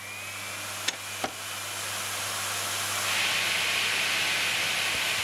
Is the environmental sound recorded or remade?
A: recorded